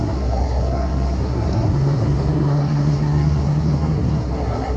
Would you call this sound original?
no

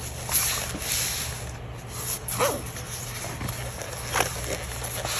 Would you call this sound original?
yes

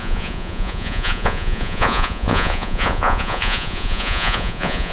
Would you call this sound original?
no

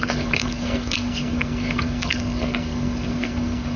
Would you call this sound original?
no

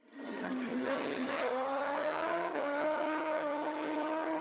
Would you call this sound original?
no